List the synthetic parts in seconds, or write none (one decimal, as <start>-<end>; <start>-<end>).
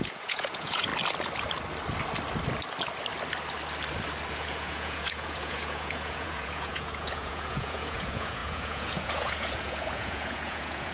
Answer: 0.0-0.9; 4.3-10.9